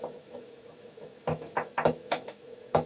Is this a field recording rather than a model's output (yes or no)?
no